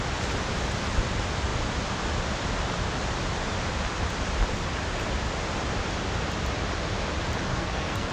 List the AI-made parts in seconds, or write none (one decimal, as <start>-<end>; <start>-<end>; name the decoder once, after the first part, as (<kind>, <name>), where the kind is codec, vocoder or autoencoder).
7.5-8.1 (codec, SNAC)